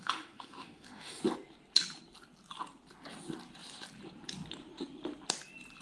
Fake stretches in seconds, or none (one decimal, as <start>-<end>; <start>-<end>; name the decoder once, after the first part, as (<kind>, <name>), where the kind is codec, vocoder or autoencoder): 0.0-1.2 (autoencoder, DAC-VAE)